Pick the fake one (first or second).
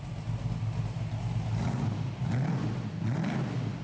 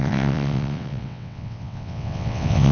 second